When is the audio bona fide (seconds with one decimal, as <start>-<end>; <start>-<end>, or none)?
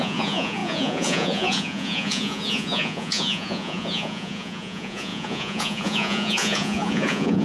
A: none